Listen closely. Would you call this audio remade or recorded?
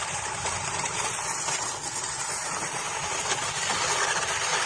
recorded